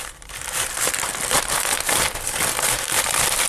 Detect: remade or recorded remade